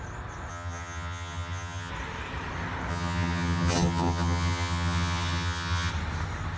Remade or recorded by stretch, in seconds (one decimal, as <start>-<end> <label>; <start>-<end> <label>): 0.0-0.5 recorded; 0.5-1.9 remade; 1.9-2.9 recorded; 2.9-5.9 remade; 5.9-6.6 recorded